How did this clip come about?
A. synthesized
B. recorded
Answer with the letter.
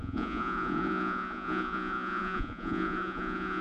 A